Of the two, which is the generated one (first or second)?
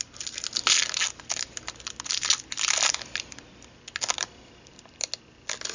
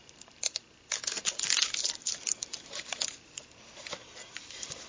second